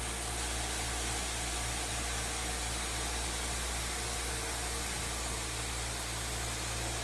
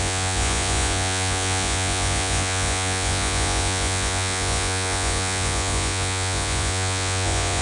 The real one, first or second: first